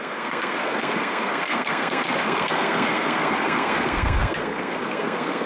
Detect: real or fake fake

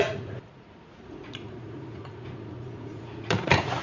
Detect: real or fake fake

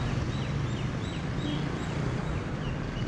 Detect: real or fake real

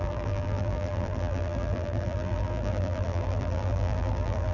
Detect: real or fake fake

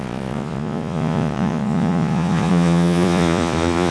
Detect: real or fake fake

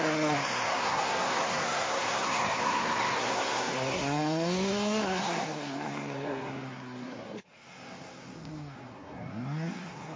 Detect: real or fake fake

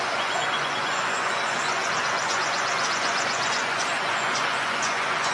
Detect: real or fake fake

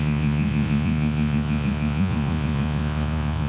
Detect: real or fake fake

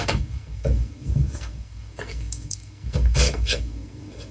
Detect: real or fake fake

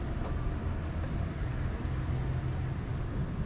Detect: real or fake real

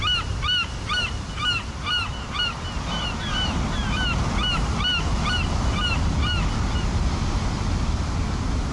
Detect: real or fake real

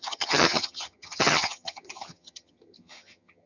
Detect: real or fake fake